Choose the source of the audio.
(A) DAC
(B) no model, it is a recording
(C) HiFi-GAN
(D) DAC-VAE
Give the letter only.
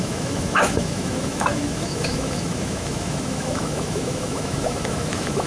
D